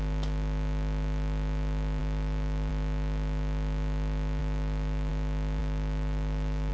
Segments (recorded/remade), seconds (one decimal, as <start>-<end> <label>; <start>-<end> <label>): 0.0-2.0 recorded; 2.0-2.7 remade; 2.7-4.4 recorded; 4.4-5.1 remade; 5.1-5.6 recorded; 5.6-6.7 remade